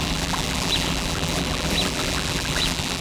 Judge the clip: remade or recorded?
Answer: remade